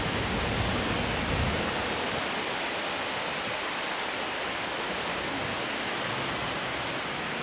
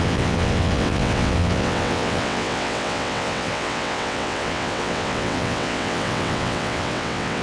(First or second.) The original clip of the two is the first